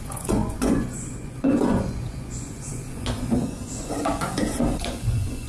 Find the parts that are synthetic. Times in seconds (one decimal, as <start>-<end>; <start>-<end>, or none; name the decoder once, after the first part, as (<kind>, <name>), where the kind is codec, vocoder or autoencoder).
0.0-5.5 (vocoder, Vocos)